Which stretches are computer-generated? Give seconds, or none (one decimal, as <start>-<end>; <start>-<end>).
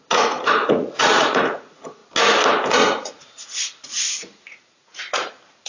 0.0-2.0; 2.7-5.7